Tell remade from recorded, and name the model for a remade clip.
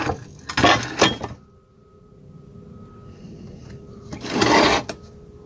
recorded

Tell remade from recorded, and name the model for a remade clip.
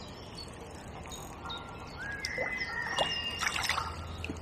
recorded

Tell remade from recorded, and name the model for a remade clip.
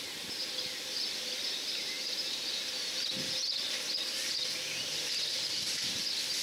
recorded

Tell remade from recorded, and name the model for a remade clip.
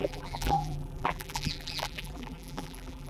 remade, vocoder, BigVGAN v2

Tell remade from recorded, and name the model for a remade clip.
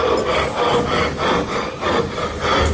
recorded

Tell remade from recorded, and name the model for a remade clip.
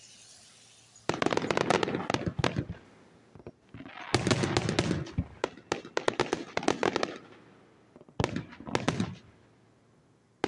recorded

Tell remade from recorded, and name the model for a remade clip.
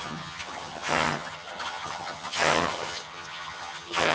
remade, vocoder, HiFi-GAN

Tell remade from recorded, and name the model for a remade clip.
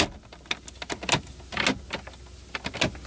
recorded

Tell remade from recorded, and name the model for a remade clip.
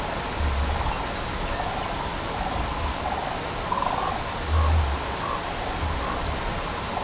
recorded